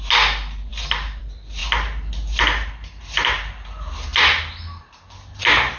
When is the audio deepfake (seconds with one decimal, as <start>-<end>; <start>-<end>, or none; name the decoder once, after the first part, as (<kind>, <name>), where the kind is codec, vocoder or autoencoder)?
none